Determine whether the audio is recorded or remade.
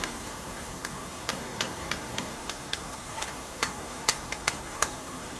remade